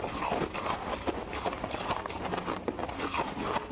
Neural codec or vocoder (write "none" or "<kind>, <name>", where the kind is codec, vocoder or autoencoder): none